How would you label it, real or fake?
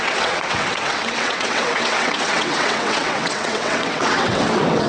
fake